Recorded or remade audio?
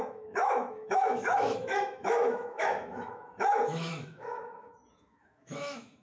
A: remade